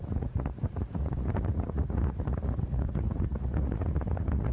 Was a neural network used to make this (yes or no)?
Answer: yes